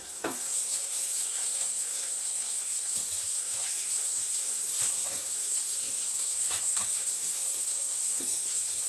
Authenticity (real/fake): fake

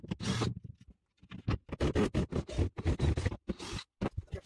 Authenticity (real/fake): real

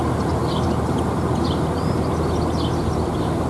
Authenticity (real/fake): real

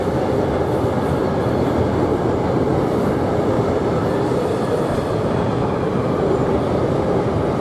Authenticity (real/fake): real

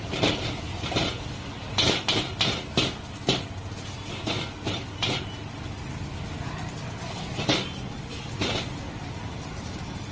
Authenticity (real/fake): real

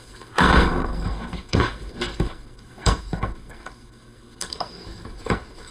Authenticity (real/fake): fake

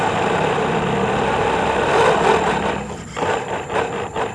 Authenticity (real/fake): real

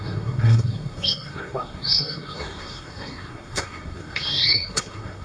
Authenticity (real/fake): fake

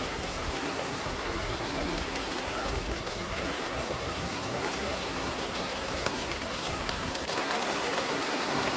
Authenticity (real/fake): fake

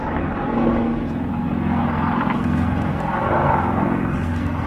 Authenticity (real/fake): fake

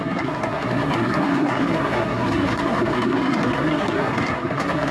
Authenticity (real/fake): fake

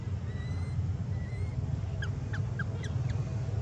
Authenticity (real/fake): real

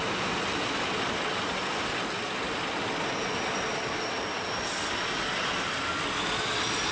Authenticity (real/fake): real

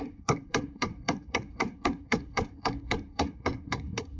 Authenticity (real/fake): fake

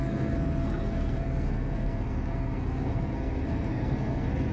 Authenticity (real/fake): fake